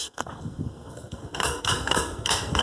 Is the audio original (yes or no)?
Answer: no